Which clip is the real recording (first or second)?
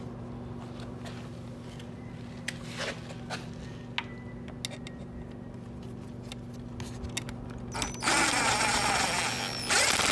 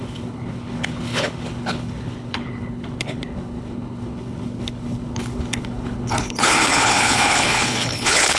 first